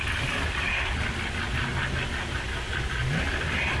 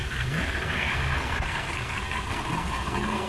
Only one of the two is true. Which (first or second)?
first